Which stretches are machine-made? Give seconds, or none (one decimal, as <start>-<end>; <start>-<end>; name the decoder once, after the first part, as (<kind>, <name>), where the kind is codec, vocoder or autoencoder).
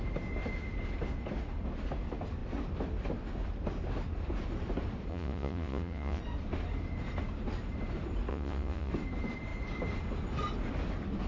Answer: 5.1-6.2 (vocoder, Vocos); 8.3-8.9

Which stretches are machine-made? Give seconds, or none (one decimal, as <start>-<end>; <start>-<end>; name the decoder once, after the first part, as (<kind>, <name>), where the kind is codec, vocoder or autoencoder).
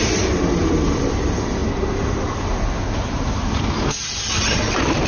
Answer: none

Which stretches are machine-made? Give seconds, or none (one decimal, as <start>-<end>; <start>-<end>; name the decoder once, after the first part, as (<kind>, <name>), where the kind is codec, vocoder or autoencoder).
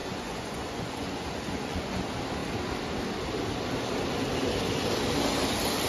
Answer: 0.0-2.0 (vocoder, Vocos)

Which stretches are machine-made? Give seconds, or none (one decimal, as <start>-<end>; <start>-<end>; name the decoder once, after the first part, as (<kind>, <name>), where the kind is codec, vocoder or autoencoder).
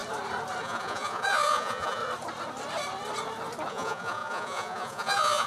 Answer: 0.6-2.0 (vocoder, Vocos); 3.7-5.5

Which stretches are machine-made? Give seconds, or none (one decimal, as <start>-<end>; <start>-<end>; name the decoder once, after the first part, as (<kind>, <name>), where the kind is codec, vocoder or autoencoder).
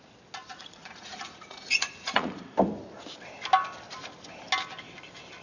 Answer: 0.5-2.4 (vocoder, Vocos)